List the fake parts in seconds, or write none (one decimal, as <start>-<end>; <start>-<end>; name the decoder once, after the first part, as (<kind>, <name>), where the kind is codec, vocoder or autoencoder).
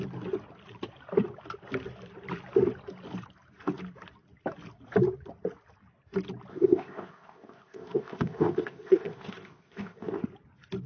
6.5-10.2 (codec, ZipCodec)